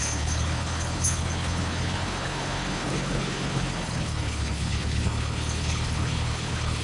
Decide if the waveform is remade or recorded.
remade